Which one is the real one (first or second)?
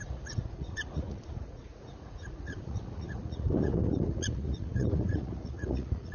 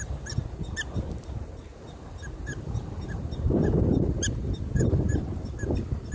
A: second